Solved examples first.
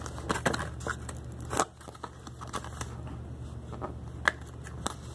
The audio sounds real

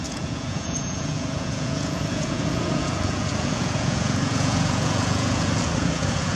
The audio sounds fake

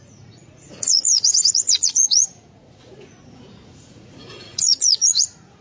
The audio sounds fake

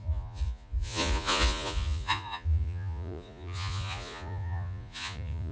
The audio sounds fake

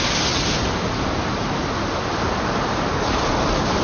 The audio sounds real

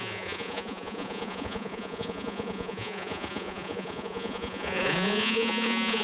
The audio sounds fake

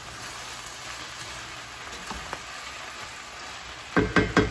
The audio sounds real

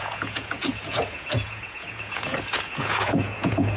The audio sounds fake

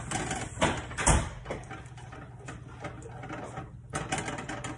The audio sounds real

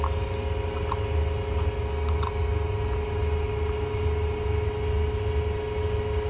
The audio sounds real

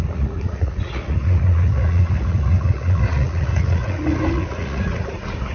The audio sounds fake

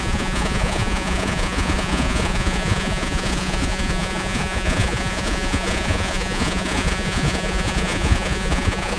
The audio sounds fake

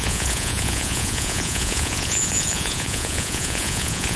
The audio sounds fake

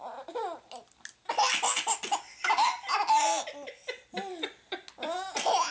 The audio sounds real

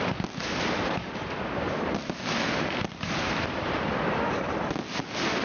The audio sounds real